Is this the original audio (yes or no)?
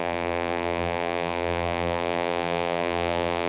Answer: no